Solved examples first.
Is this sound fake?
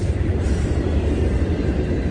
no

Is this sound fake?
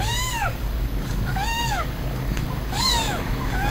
yes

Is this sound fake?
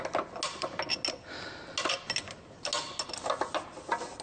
no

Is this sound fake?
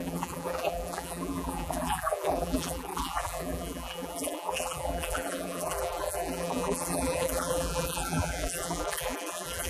yes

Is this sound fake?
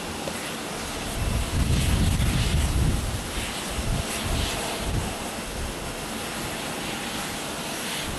no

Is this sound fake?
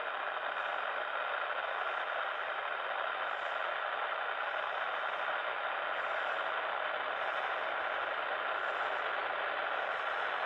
no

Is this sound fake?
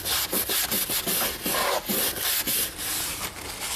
no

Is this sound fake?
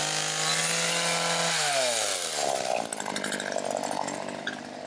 no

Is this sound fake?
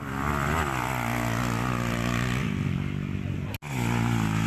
no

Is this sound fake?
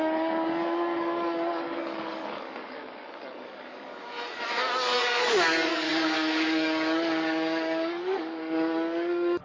yes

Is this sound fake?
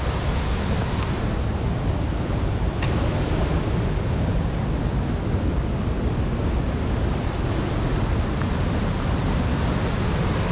no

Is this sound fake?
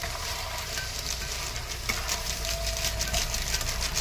no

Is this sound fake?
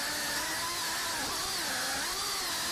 no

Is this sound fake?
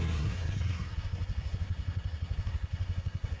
yes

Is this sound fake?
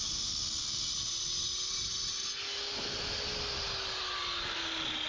no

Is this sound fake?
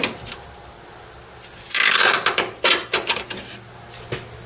no